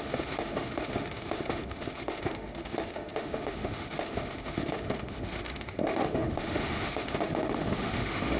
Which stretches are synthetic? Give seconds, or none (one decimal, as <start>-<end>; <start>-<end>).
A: 0.0-8.4